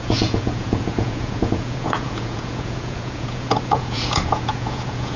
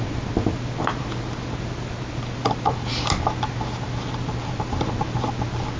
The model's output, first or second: first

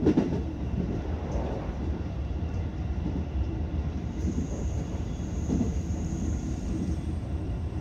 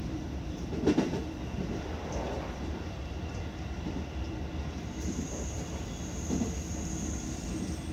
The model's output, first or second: first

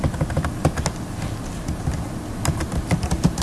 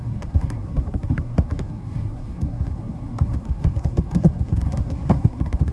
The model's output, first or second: second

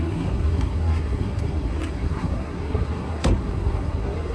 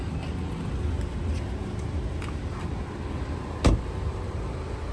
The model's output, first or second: first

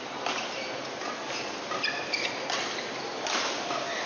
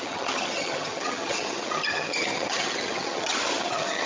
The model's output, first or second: second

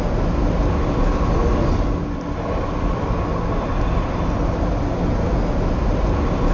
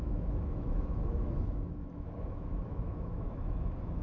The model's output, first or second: second